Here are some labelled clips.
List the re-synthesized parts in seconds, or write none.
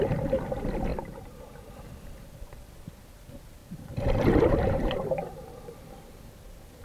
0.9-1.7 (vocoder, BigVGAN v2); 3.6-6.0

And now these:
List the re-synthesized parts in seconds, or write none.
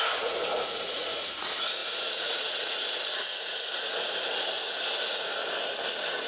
0.0-5.4 (vocoder, Vocos)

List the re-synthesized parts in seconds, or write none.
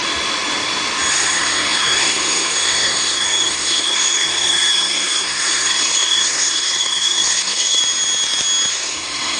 1.1-7.8 (codec, SNAC); 8.7-9.4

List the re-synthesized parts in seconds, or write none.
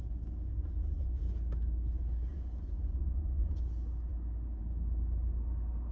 0.6-1.2 (vocoder, Vocos); 2.3-3.6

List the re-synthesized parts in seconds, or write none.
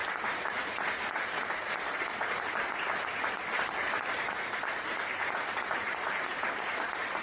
0.0-7.2 (vocoder, BigVGAN v2)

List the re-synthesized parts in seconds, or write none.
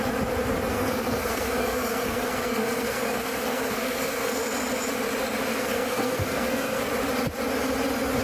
0.7-4.3 (codec, SNAC); 5.5-6.8